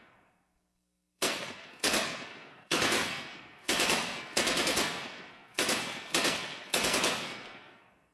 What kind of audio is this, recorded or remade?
remade